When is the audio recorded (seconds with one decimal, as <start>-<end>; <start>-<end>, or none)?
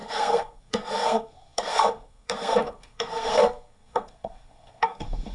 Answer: none